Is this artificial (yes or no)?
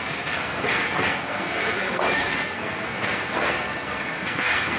yes